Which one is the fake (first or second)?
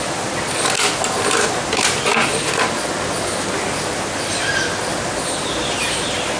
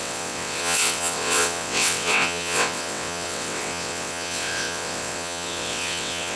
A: second